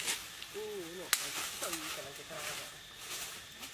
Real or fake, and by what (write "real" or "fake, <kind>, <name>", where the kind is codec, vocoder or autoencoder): real